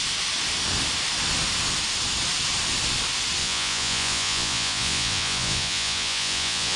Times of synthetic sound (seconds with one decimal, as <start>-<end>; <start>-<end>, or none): 3.4-6.8